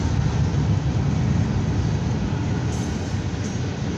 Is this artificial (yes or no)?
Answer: no